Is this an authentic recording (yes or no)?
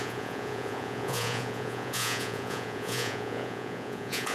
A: no